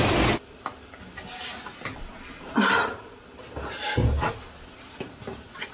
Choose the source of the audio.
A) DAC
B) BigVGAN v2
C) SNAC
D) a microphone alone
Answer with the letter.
D